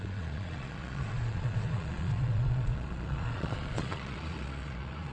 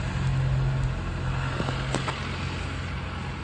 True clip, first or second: second